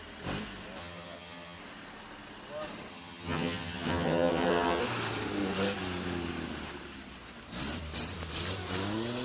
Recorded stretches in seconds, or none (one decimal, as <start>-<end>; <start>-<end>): 0.0-0.8; 1.6-2.9; 4.8-9.2